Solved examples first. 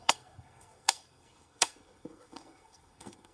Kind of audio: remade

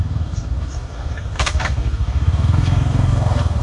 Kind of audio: remade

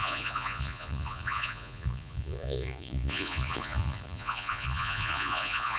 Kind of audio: remade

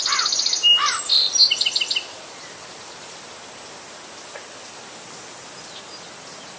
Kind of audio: recorded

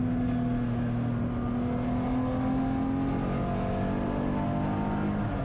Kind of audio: recorded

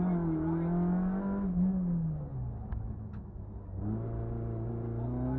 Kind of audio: recorded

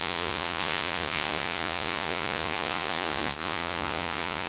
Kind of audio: remade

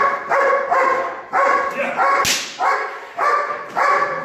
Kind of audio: recorded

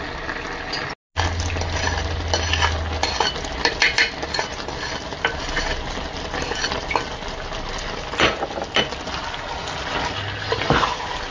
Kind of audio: recorded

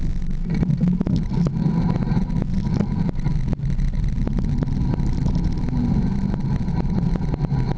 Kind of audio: recorded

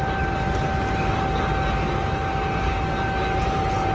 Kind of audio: recorded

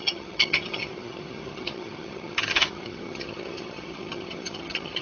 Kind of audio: remade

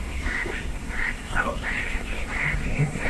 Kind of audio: remade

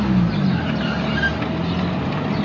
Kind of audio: recorded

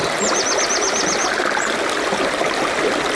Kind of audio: recorded